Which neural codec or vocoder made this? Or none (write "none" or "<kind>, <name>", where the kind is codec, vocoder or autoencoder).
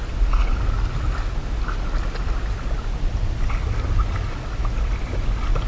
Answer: none